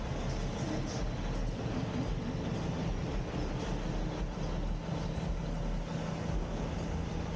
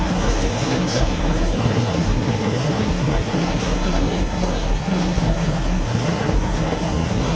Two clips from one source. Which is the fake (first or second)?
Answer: second